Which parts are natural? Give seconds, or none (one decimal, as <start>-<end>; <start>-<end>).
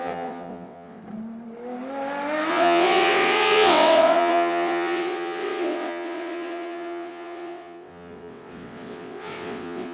1.0-2.5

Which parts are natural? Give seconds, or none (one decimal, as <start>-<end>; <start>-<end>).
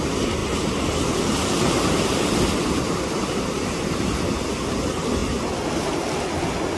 0.0-6.8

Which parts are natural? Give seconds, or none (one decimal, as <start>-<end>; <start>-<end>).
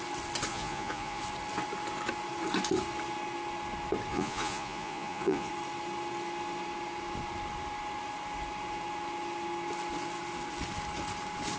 0.0-0.5; 1.2-4.1; 5.5-11.6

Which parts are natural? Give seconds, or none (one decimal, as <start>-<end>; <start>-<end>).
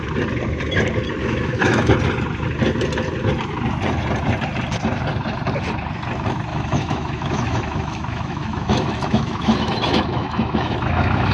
0.0-1.2; 1.9-6.5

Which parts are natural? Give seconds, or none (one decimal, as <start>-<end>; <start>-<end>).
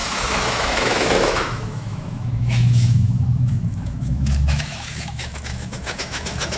none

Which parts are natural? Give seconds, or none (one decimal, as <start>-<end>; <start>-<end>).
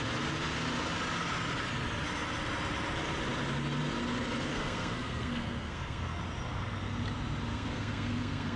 0.0-4.5; 6.2-7.5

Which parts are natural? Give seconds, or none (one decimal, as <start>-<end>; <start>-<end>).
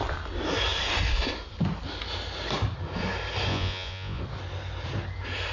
0.0-3.5; 4.2-5.5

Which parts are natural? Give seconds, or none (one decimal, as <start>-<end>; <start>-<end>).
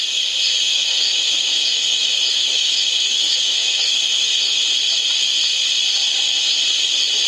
0.0-0.7; 4.6-7.3